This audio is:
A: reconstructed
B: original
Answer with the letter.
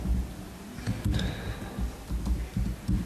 B